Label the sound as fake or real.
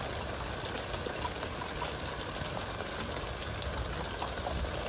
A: real